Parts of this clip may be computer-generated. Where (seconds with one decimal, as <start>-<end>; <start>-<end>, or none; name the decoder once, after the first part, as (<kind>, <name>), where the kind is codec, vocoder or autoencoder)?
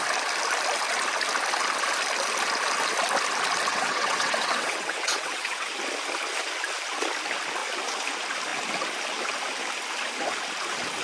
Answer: 3.7-5.7 (vocoder, WaveNeXt)